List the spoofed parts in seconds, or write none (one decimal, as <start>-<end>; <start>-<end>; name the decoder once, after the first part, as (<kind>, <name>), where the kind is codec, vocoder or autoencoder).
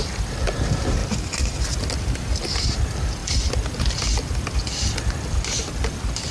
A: none